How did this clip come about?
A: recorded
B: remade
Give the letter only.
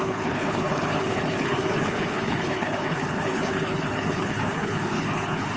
B